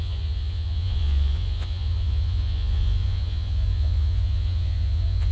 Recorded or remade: remade